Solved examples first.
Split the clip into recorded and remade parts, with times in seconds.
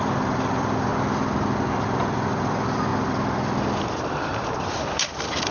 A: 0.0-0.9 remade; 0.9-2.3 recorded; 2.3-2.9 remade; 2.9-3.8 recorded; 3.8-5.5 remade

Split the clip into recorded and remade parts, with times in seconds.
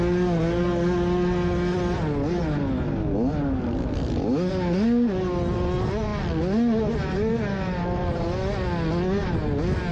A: 0.0-9.9 recorded